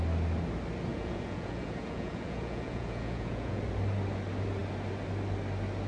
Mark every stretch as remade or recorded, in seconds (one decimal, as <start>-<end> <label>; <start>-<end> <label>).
0.0-0.9 recorded; 0.9-3.6 remade; 3.6-5.9 recorded